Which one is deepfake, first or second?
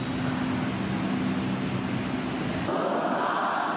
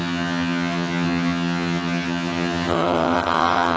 second